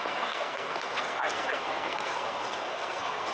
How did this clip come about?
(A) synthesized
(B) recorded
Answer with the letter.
A